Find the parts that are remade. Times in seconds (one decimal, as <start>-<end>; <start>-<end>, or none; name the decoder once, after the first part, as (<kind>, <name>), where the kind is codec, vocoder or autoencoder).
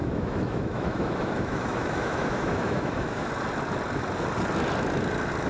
0.0-3.3 (autoencoder, DAC-VAE)